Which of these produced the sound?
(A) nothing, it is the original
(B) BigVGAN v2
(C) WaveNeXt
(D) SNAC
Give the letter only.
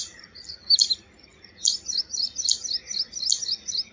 A